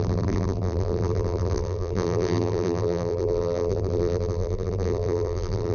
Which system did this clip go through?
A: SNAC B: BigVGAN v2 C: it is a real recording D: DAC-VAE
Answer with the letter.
B